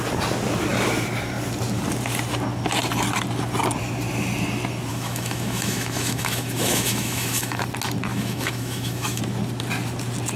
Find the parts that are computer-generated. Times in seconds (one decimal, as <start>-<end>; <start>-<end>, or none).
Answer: 4.9-7.6; 8.1-9.2